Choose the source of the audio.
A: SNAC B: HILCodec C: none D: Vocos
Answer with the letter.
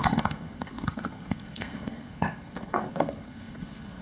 A